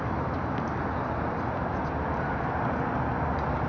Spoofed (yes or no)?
no